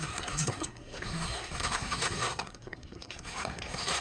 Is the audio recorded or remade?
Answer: remade